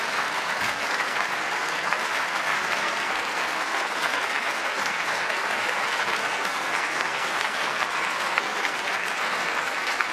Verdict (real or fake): fake